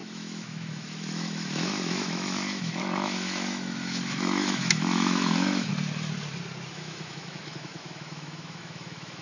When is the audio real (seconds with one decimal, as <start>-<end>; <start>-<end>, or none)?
5.7-6.7

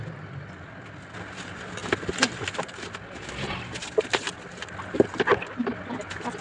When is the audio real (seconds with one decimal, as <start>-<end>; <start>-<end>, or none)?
0.0-6.4

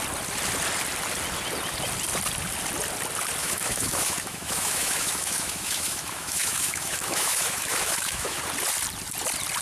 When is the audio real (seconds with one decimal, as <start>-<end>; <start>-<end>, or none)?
0.0-3.4; 8.4-9.6

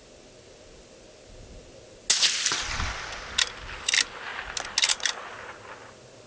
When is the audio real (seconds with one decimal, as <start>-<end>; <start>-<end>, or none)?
0.0-6.3